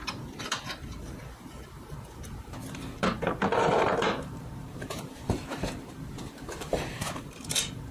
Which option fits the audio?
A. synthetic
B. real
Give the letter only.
A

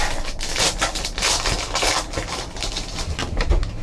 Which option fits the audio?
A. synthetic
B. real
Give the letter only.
B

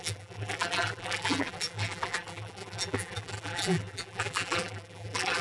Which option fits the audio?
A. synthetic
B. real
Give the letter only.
A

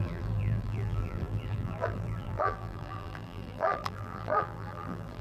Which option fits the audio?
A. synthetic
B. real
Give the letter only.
A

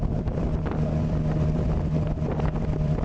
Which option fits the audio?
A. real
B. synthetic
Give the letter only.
B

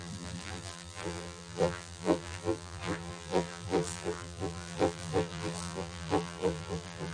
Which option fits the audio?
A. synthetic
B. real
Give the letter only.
A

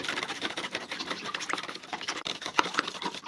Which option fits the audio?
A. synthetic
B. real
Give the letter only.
A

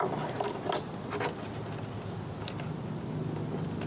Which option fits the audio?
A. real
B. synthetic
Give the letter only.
A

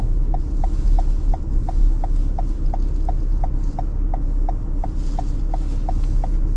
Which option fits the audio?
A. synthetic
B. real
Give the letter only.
B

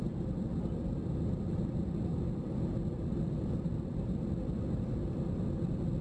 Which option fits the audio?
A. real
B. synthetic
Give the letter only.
A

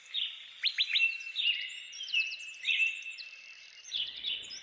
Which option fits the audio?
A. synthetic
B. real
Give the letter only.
A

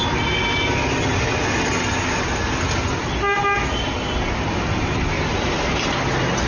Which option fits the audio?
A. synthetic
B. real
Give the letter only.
B